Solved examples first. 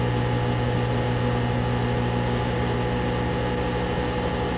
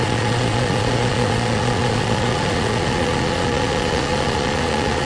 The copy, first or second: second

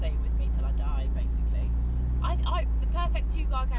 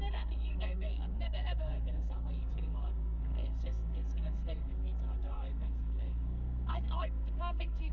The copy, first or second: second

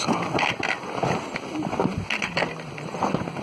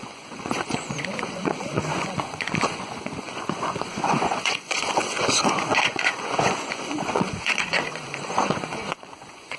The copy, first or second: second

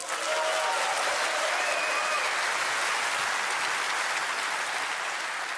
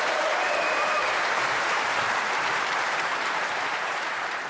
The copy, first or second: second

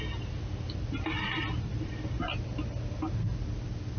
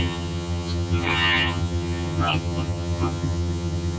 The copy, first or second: second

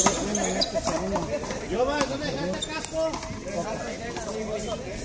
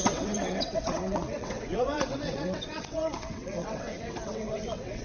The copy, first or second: second